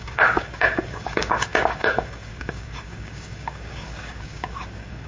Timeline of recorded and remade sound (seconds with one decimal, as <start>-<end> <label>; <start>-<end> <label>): 0.0-5.1 remade

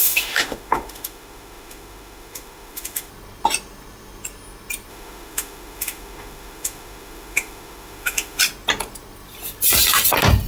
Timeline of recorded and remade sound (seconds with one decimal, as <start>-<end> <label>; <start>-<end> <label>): 0.0-3.1 remade; 3.1-4.9 recorded; 4.9-8.4 remade; 8.4-10.5 recorded

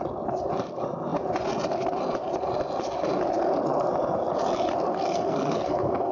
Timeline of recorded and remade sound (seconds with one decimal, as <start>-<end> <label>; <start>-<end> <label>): 0.0-4.9 recorded; 4.9-6.1 remade

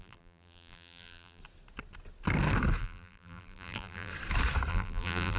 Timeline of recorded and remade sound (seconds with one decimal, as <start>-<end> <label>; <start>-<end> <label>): 0.0-1.4 remade; 1.4-2.8 recorded; 2.8-4.1 remade; 4.1-4.7 recorded; 4.7-5.4 remade

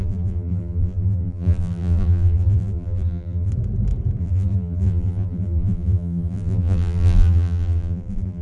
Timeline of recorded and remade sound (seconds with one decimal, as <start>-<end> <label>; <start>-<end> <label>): 0.0-3.5 remade; 3.5-4.2 recorded; 4.2-8.4 remade

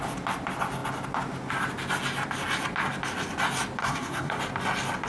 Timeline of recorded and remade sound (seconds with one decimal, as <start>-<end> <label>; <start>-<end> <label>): 0.0-3.8 recorded; 3.8-4.4 remade; 4.4-5.1 recorded

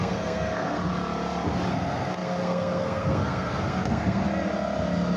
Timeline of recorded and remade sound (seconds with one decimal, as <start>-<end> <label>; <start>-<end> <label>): 0.0-0.8 remade; 0.8-1.7 recorded; 1.7-4.2 remade; 4.2-5.2 recorded

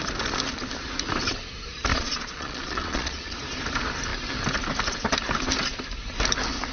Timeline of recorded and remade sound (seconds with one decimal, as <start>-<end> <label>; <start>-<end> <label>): 0.0-1.9 recorded; 1.9-3.4 remade; 3.4-6.7 recorded